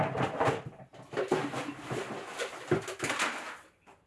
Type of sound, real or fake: real